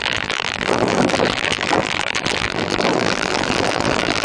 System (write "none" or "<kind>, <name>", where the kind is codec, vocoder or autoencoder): vocoder, BigVGAN v2